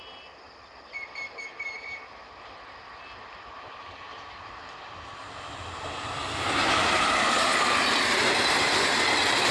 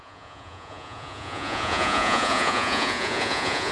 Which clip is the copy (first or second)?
second